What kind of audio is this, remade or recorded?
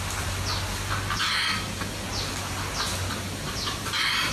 recorded